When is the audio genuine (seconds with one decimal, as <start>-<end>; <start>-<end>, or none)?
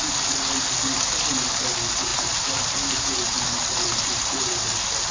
0.0-2.1; 4.6-5.1